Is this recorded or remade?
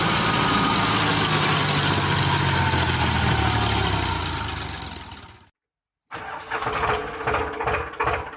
recorded